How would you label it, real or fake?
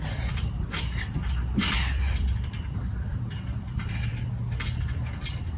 fake